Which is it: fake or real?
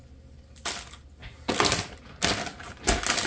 real